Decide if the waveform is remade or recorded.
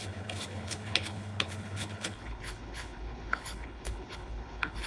remade